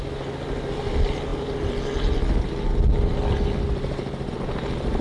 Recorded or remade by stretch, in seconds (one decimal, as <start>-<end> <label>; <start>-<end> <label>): 0.0-5.0 recorded